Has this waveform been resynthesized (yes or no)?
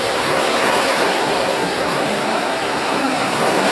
yes